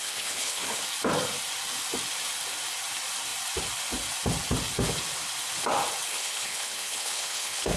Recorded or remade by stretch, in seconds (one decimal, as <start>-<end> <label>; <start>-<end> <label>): 0.0-0.8 remade; 0.8-6.1 recorded; 6.1-7.8 remade